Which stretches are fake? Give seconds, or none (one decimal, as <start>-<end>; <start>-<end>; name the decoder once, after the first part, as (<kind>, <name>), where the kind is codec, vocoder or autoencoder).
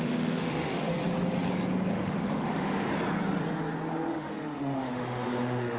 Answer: 0.0-0.9 (autoencoder, DAC-VAE); 1.9-2.9; 4.1-5.8